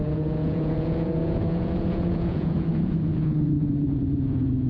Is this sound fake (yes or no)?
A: yes